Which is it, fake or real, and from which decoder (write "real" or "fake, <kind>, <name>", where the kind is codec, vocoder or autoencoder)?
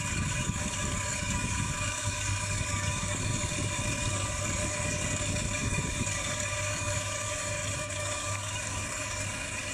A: fake, codec, DAC